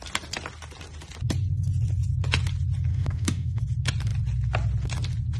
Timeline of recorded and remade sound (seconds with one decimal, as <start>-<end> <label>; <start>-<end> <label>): 0.0-2.9 recorded; 2.9-3.6 remade; 3.6-5.4 recorded